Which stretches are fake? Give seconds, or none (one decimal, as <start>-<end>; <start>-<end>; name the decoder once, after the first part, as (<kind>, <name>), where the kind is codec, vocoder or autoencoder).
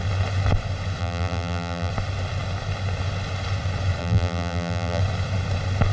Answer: 1.0-1.9 (vocoder, BigVGAN v2); 4.0-5.0